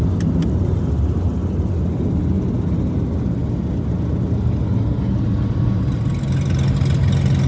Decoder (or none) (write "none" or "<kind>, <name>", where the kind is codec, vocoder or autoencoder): none